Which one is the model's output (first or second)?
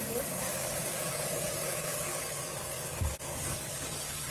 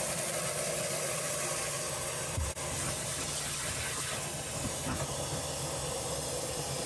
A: first